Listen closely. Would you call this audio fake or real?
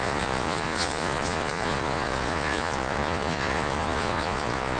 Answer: fake